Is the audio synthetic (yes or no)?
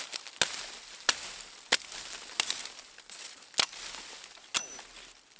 no